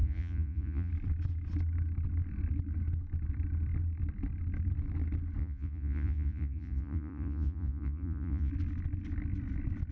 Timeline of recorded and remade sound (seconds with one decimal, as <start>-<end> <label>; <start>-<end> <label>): 0.0-0.9 remade; 0.9-5.4 recorded; 5.4-8.5 remade; 8.5-9.9 recorded

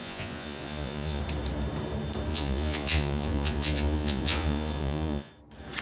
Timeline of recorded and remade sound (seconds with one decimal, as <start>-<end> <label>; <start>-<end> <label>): 0.0-1.2 remade; 1.2-2.3 recorded; 2.3-5.3 remade; 5.3-5.8 recorded

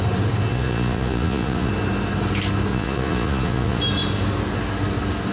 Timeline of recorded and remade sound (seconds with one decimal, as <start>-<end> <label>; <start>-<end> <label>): 0.0-0.5 recorded; 0.5-1.7 remade; 1.7-2.7 recorded; 2.7-3.8 remade; 3.8-5.3 recorded

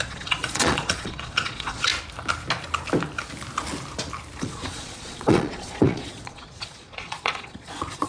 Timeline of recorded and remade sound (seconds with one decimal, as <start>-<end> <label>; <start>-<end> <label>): 0.0-1.9 remade; 1.9-4.4 recorded; 4.4-8.1 remade

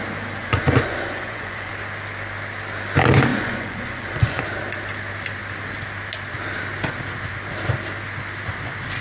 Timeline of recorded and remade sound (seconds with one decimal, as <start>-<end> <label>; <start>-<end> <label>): 0.0-0.4 recorded; 0.4-1.7 remade; 1.7-3.3 recorded; 3.3-4.4 remade; 4.4-9.0 recorded

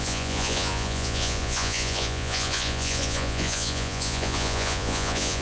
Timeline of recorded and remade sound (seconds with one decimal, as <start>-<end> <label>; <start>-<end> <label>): 0.0-5.4 remade

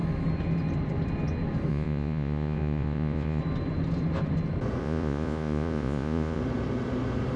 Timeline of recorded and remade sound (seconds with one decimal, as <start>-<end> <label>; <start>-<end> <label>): 0.0-1.7 recorded; 1.7-3.4 remade; 3.4-4.8 recorded; 4.8-6.4 remade; 6.4-7.4 recorded